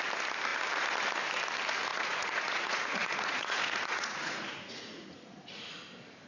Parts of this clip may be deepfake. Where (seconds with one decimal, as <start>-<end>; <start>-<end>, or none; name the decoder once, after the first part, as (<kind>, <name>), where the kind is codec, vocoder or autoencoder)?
1.9-5.7 (vocoder, Vocos)